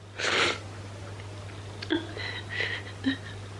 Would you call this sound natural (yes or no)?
yes